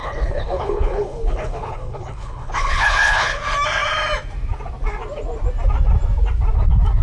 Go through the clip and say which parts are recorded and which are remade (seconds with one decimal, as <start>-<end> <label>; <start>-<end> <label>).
0.0-3.4 remade; 3.4-7.0 recorded